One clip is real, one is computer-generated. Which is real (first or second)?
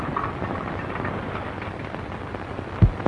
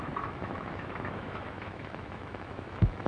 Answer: first